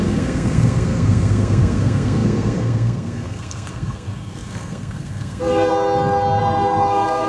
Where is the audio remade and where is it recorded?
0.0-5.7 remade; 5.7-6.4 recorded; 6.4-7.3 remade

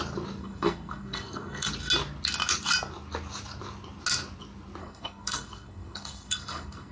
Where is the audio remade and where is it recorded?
0.0-0.4 recorded; 0.4-1.7 remade; 1.7-4.8 recorded; 4.8-6.9 remade

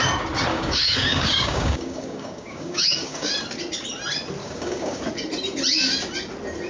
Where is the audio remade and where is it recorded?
0.0-0.5 recorded; 0.5-3.3 remade; 3.3-4.4 recorded; 4.4-5.0 remade; 5.0-6.7 recorded

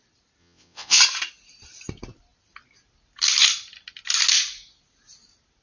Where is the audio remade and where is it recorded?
0.0-0.4 recorded; 0.4-1.0 remade; 1.0-5.6 recorded

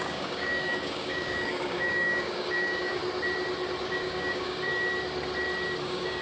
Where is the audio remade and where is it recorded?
0.0-3.0 remade; 3.0-3.8 recorded; 3.8-4.7 remade; 4.7-5.8 recorded; 5.8-6.2 remade

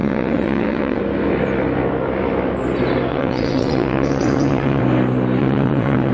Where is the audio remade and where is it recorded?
0.0-1.0 remade; 1.0-3.1 recorded; 3.1-4.8 remade; 4.8-5.4 recorded; 5.4-6.1 remade

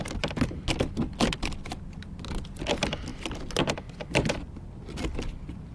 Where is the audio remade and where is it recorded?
0.0-5.7 recorded

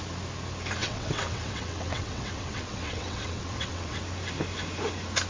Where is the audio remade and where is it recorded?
0.0-0.8 recorded; 0.8-4.0 remade; 4.0-5.3 recorded